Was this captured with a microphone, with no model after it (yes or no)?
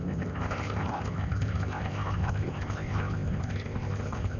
no